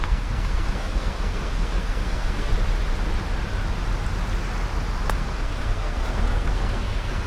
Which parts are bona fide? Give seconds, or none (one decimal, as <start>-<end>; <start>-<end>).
2.5-5.1